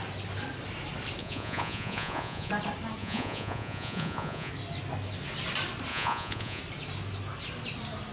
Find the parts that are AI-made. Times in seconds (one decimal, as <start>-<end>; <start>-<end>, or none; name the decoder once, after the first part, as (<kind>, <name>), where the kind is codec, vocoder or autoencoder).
1.2-2.5 (vocoder, Vocos); 3.0-4.5; 5.9-6.6